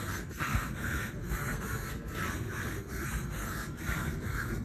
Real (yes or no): no